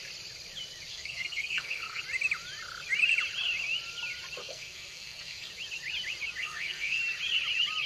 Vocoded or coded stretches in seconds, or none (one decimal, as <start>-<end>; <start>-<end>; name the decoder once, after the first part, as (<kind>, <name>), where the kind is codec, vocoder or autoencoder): 0.9-2.0 (codec, SNAC); 4.4-5.5; 6.4-7.0